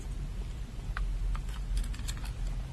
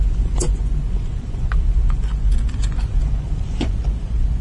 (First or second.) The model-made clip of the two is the second